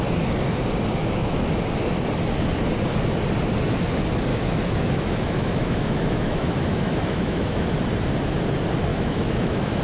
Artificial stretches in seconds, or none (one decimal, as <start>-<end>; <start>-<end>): 1.0-1.5; 4.3-7.8; 8.9-9.8